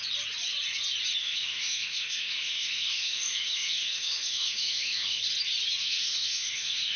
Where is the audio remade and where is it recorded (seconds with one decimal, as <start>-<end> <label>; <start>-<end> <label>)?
0.0-1.2 recorded; 1.2-5.2 remade; 5.2-5.8 recorded; 5.8-7.0 remade